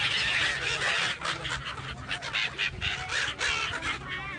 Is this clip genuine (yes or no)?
yes